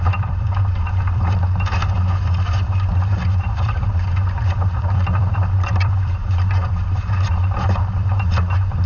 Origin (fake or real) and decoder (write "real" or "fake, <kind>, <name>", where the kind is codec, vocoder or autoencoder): fake, vocoder, BigVGAN v2